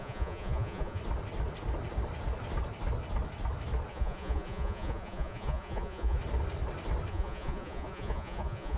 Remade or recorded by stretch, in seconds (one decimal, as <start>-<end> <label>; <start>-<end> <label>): 0.0-1.0 remade; 1.0-3.9 recorded; 3.9-6.2 remade; 6.2-7.1 recorded; 7.1-8.8 remade